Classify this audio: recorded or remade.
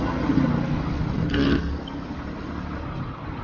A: recorded